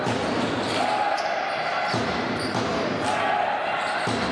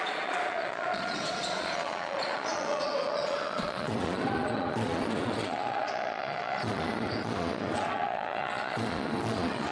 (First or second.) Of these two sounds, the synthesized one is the second